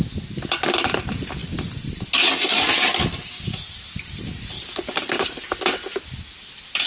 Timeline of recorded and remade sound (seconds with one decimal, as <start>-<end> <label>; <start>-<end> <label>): 0.0-6.9 recorded